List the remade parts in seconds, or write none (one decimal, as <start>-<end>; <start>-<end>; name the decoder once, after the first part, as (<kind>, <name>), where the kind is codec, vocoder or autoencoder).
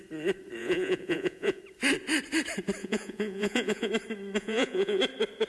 0.6-1.6 (vocoder, Vocos); 2.8-3.9; 4.4-5.0